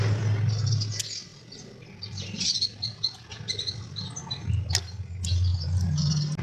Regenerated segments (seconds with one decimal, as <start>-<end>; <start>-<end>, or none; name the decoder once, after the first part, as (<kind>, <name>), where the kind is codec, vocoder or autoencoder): 1.3-4.2 (vocoder, BigVGAN v2)